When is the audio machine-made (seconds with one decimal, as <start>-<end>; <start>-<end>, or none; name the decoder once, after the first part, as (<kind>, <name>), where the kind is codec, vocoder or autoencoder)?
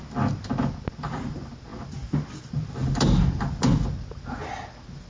none